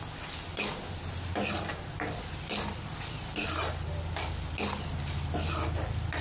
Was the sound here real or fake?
real